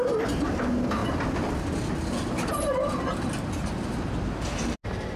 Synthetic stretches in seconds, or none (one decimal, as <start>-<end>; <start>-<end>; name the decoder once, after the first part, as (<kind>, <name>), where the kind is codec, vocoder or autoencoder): none